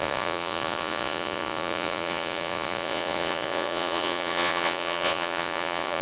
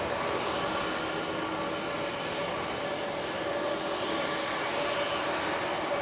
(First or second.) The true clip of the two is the second